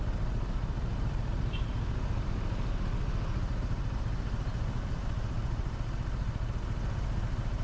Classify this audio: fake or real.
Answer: real